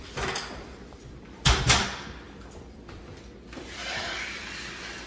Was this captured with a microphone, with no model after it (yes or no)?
no